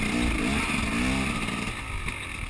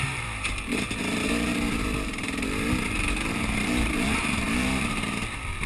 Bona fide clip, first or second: first